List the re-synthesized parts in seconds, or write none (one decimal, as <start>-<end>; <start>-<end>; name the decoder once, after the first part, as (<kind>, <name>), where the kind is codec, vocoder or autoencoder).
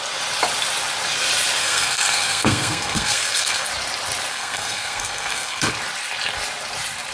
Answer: 1.6-3.7 (codec, SNAC); 4.3-5.7